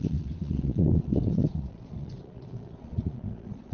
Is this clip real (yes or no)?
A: no